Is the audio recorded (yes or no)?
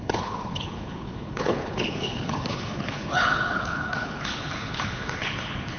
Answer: no